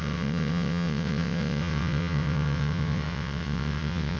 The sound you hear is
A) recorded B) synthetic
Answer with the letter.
B